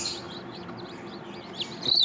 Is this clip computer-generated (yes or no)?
no